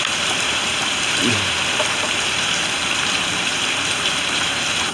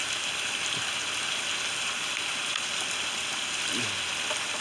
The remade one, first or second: first